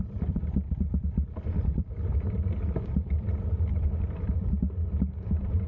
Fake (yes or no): yes